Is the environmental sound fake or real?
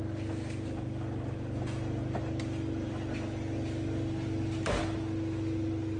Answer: real